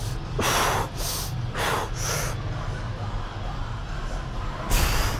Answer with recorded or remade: recorded